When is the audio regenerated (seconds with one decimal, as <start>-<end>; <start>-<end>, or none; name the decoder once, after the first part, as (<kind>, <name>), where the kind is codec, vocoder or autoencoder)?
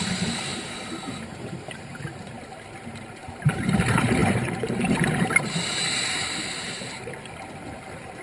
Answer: 0.0-8.2 (vocoder, BigVGAN v2)